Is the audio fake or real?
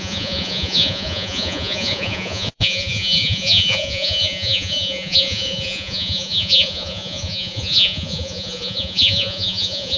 fake